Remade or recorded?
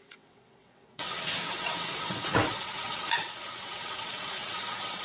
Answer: remade